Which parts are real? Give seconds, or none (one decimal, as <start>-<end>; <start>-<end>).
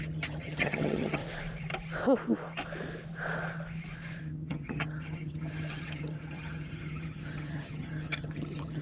1.2-4.2